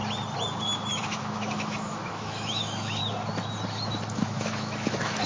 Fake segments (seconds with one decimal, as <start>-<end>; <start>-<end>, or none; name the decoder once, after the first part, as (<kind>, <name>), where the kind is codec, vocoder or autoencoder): 1.0-3.0 (autoencoder, DAC-VAE); 4.2-5.3